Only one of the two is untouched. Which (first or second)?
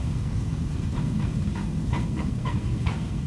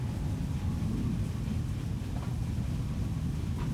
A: second